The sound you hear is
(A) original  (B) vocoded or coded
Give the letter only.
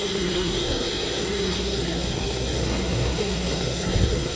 B